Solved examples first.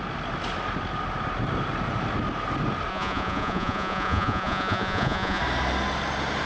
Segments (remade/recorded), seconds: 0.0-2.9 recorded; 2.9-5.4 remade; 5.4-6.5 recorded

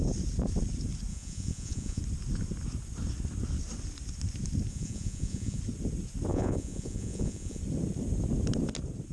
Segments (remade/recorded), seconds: 0.0-1.1 recorded; 1.1-2.0 remade; 2.0-4.7 recorded; 4.7-5.6 remade; 5.6-6.3 recorded; 6.3-7.6 remade; 7.6-9.1 recorded

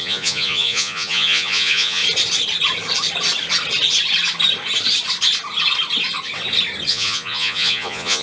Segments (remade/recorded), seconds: 0.0-2.0 remade; 2.0-6.9 recorded; 6.9-8.2 remade

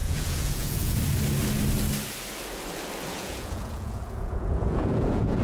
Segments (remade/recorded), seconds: 0.0-1.0 remade; 1.0-3.1 recorded; 3.1-5.4 remade

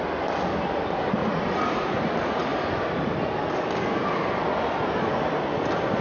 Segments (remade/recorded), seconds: 0.0-1.2 recorded; 1.2-2.0 remade; 2.0-6.0 recorded